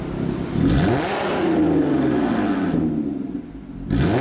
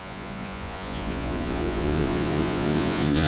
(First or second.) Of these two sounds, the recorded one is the first